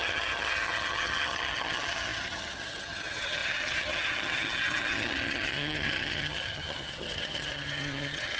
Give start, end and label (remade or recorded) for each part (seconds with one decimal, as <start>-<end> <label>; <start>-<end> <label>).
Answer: 0.0-8.4 remade